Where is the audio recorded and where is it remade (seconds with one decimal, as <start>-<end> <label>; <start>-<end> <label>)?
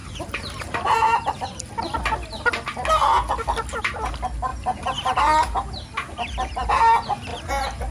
0.0-1.4 remade; 1.4-4.5 recorded; 4.5-5.2 remade; 5.2-7.9 recorded